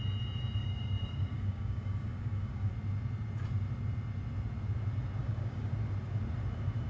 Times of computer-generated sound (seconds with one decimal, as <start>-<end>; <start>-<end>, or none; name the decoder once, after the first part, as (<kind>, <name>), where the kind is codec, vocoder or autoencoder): 0.6-2.7 (codec, DAC); 5.2-5.7